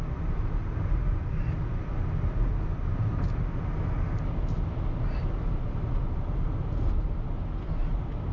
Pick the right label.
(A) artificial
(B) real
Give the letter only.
B